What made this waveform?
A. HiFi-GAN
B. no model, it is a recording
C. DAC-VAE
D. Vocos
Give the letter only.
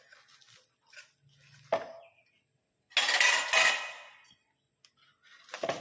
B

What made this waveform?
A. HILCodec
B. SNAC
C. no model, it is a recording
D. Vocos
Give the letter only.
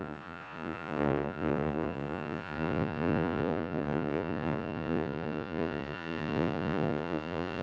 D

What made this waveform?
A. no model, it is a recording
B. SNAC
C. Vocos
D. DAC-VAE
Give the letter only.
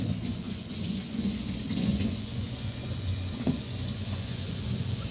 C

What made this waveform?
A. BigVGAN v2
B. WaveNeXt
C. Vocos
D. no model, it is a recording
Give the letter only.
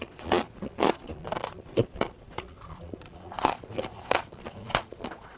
C